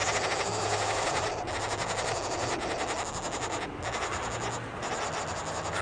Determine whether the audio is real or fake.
real